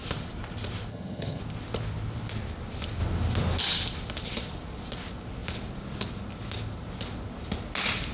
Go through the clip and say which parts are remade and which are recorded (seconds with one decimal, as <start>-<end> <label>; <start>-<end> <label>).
0.0-0.9 recorded; 0.9-1.4 remade; 1.4-8.1 recorded